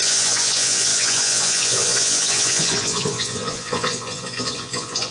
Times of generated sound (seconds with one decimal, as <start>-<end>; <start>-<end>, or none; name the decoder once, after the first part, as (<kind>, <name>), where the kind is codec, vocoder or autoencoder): 0.0-5.1 (vocoder, Vocos)